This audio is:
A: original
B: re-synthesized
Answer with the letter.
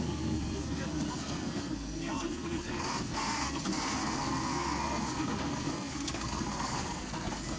B